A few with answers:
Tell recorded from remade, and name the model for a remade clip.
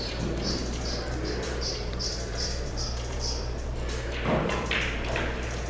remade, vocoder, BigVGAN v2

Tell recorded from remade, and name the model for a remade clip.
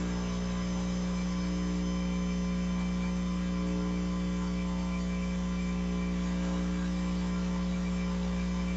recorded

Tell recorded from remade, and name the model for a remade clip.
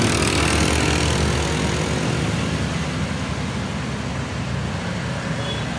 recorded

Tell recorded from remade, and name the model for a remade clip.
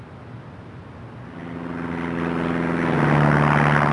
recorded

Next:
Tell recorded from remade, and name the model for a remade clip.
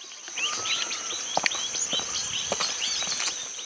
recorded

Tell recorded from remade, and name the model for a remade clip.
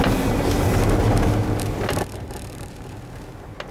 recorded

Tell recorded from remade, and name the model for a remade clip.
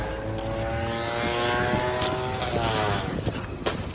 recorded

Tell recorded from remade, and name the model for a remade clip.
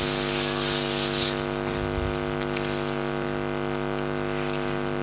recorded